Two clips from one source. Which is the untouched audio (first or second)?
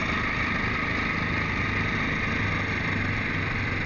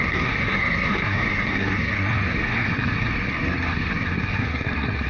first